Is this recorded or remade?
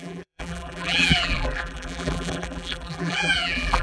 remade